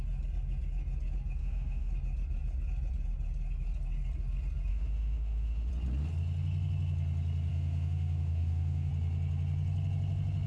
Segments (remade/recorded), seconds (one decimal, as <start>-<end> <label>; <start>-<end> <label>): 0.0-1.4 recorded; 1.4-1.9 remade; 1.9-4.7 recorded; 4.7-5.7 remade; 5.7-7.5 recorded; 7.5-8.9 remade; 8.9-10.5 recorded

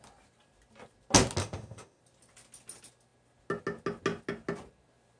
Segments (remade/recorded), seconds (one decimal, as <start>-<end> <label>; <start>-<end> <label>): 0.0-1.4 recorded; 1.4-2.0 remade; 2.0-5.2 recorded

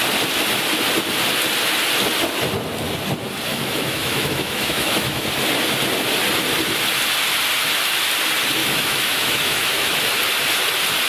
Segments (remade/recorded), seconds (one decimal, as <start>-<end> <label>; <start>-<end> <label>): 0.0-3.5 recorded; 3.5-5.2 remade; 5.2-8.6 recorded; 8.6-10.0 remade; 10.0-11.1 recorded

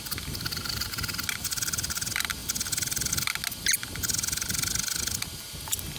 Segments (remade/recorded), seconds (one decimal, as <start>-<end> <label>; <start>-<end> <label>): 0.0-6.0 recorded